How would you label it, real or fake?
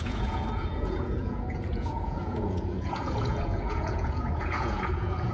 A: fake